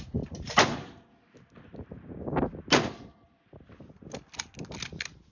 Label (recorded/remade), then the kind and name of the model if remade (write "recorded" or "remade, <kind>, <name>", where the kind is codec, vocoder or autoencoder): recorded